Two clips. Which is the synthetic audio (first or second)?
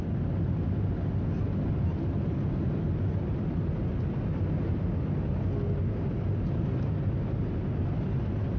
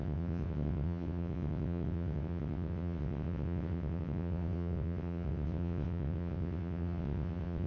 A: second